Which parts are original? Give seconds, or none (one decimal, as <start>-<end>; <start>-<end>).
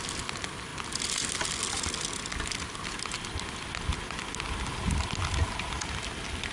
0.0-6.5